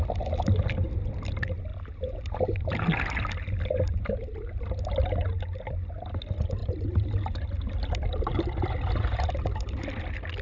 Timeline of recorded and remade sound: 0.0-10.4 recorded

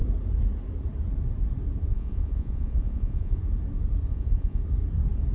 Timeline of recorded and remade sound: 0.0-1.9 recorded; 1.9-3.4 remade; 3.4-4.1 recorded; 4.1-4.6 remade; 4.6-5.3 recorded

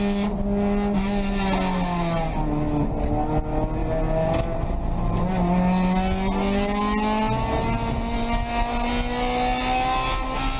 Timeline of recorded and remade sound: 0.0-10.6 recorded

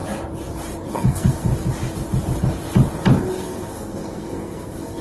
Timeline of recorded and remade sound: 0.0-0.9 recorded; 0.9-1.5 remade; 1.5-3.3 recorded; 3.3-5.0 remade

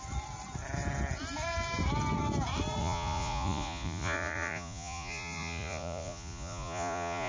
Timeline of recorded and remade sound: 0.0-2.8 recorded; 2.8-7.3 remade

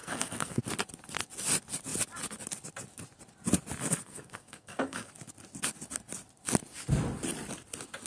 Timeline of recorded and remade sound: 0.0-0.6 remade; 0.6-3.8 recorded; 3.8-5.1 remade; 5.1-8.1 recorded

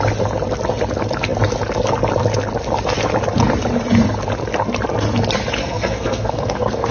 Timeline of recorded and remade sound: 0.0-5.6 recorded; 5.6-6.9 remade